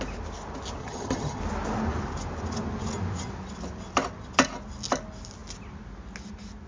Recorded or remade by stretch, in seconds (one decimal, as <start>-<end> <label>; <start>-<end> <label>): 0.0-0.8 recorded; 0.8-1.4 remade; 1.4-6.7 recorded